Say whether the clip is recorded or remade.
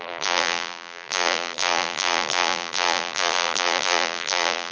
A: remade